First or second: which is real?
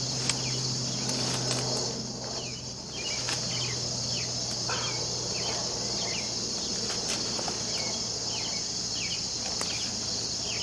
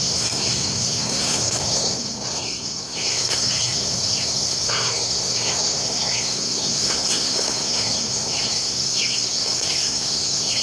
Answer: first